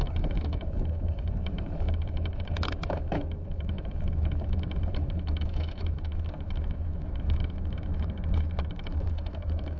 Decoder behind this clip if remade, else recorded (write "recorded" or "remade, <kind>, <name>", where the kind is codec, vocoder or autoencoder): remade, autoencoder, DAC-VAE